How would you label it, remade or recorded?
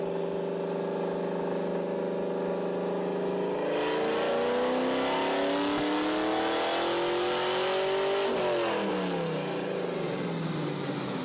recorded